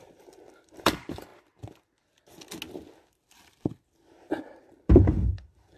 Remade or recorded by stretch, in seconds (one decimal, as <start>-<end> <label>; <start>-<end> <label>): 0.0-1.3 remade; 1.3-4.4 recorded; 4.4-5.8 remade